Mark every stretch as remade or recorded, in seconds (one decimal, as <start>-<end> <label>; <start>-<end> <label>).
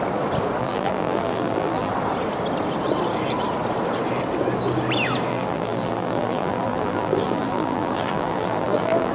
0.0-0.6 recorded; 0.6-1.9 remade; 1.9-5.3 recorded; 5.3-9.1 remade